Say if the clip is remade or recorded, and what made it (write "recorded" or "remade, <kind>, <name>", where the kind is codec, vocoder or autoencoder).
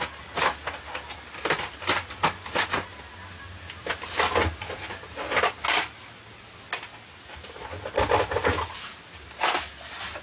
recorded